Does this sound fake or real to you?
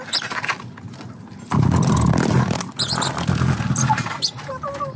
real